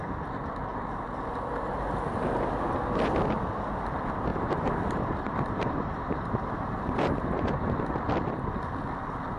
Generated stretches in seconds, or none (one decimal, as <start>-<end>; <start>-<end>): 4.3-7.8